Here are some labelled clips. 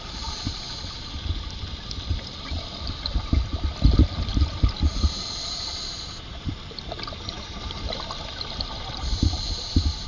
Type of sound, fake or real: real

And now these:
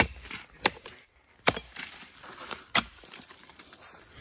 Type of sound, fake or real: fake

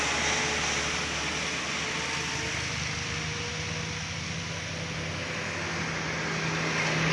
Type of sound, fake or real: real